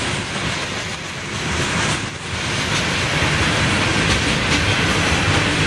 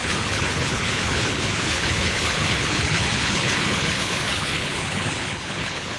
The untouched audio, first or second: first